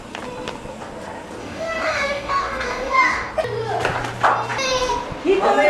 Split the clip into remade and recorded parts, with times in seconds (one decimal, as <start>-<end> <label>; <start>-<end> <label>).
0.0-1.4 recorded; 1.4-3.3 remade; 3.3-5.7 recorded